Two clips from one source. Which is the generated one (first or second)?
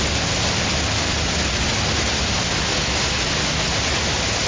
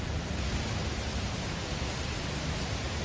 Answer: second